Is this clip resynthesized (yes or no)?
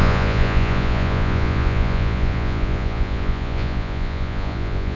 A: yes